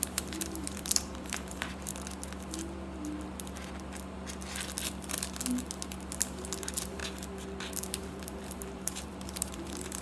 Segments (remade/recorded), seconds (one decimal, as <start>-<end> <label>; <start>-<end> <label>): 0.0-1.9 remade; 1.9-6.6 recorded; 6.6-7.0 remade; 7.0-8.0 recorded; 8.0-10.0 remade